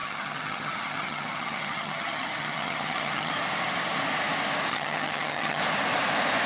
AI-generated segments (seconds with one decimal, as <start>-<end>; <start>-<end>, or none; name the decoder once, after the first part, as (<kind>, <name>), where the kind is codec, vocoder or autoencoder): 0.0-3.3 (vocoder, HiFi-GAN); 4.7-5.6